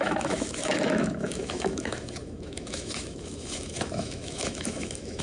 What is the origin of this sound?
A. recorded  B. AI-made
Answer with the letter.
B